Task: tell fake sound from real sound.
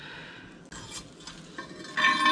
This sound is real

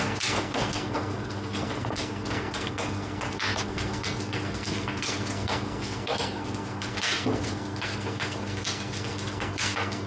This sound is fake